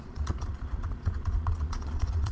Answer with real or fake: fake